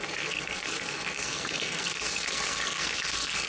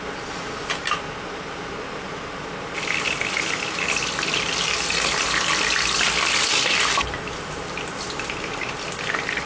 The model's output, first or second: first